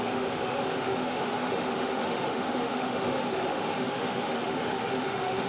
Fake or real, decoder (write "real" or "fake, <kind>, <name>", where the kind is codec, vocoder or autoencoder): fake, autoencoder, DAC-VAE